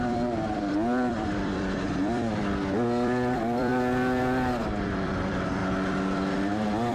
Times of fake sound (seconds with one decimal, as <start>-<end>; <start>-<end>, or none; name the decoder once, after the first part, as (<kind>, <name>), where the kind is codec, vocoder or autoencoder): 0.0-3.7 (vocoder, BigVGAN v2); 4.8-5.6